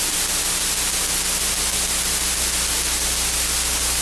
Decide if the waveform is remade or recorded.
recorded